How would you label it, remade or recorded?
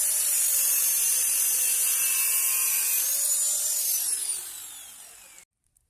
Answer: recorded